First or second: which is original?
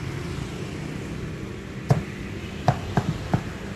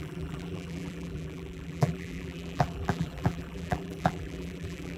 first